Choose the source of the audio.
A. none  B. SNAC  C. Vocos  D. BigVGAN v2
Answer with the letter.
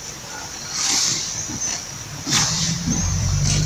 D